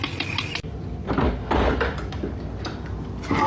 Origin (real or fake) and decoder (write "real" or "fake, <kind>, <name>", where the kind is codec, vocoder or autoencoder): real